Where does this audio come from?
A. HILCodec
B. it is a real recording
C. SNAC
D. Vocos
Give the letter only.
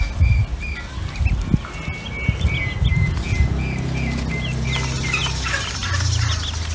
B